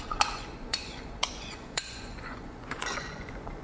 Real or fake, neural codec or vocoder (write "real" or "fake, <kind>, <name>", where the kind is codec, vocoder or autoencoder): fake, vocoder, Vocos